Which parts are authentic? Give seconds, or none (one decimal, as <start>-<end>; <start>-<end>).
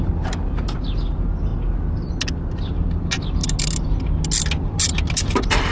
0.0-5.7